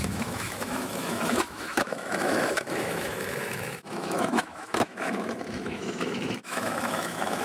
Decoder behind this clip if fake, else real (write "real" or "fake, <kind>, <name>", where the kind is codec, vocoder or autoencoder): fake, autoencoder, DAC-VAE